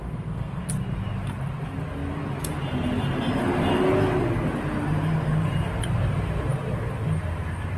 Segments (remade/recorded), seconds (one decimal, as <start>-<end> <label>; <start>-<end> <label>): 0.0-0.6 remade; 0.6-7.8 recorded